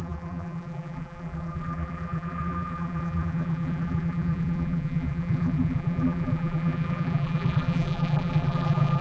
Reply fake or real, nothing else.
fake